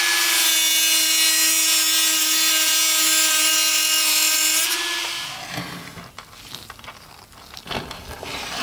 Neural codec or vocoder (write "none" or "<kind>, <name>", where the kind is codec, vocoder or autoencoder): none